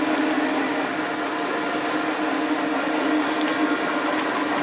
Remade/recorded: recorded